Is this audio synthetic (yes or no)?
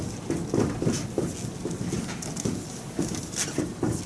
no